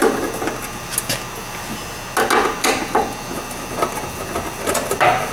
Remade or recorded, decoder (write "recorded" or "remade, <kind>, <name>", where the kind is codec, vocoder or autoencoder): recorded